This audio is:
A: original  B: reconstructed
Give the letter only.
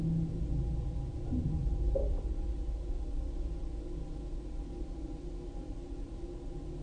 A